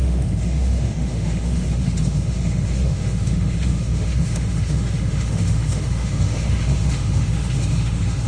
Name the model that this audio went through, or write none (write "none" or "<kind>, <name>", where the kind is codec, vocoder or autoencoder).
autoencoder, DAC-VAE